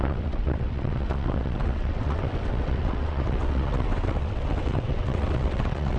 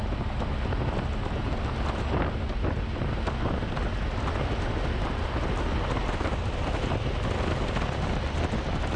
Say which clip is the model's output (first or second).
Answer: first